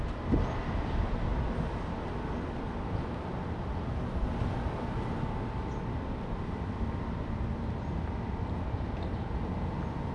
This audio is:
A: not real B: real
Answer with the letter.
B